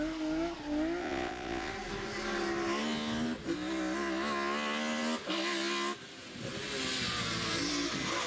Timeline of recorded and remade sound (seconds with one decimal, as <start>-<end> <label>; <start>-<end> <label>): 0.0-1.0 recorded; 1.0-1.7 remade; 1.7-8.3 recorded